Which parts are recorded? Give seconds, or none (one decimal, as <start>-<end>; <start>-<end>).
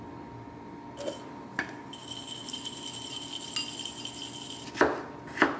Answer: 0.0-5.6